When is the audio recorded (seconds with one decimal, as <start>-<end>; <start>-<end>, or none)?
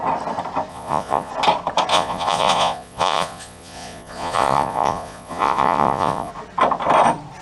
0.0-0.7; 1.3-1.9; 6.3-7.4